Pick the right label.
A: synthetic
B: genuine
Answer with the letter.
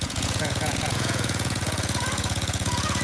A